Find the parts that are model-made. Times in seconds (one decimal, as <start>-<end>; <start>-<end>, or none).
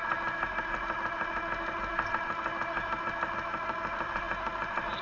none